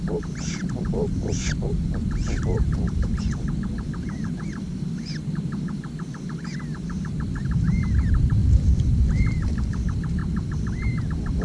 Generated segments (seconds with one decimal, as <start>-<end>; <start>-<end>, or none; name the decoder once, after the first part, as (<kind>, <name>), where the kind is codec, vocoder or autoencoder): 0.0-10.2 (vocoder, BigVGAN v2); 11.0-11.4